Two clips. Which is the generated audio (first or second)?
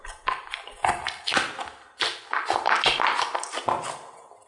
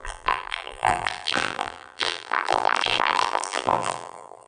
second